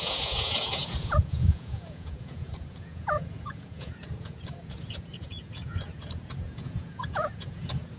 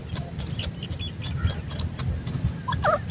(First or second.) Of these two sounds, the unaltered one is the second